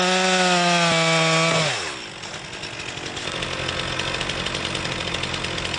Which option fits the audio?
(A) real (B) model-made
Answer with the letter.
A